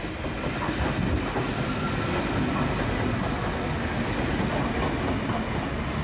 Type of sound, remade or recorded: recorded